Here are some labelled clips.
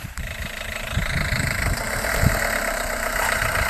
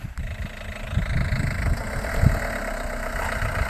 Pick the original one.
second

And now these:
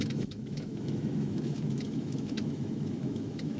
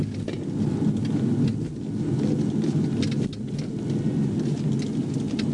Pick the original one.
second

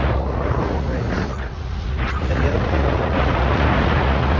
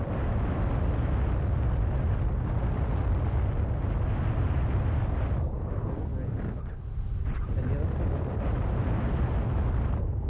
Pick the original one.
second